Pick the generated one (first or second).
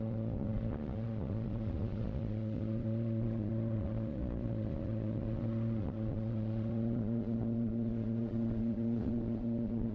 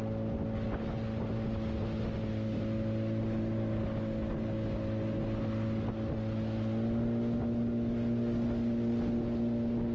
first